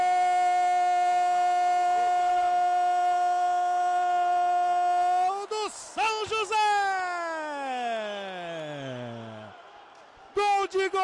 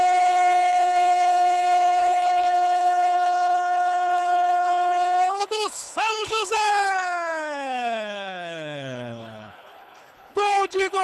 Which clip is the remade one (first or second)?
second